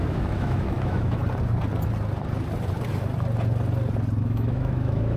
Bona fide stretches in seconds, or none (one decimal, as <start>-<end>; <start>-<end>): 1.2-4.2